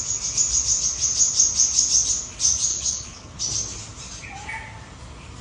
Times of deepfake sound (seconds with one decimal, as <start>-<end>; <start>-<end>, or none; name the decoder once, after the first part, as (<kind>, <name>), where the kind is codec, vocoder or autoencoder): 2.7-3.4 (codec, HILCodec)